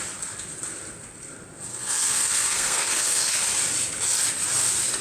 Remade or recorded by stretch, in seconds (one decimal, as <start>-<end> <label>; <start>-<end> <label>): 0.0-1.7 recorded; 1.7-3.4 remade; 3.4-5.0 recorded